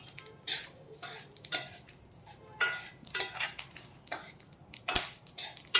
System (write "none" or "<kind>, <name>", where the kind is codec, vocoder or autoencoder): vocoder, BigVGAN v2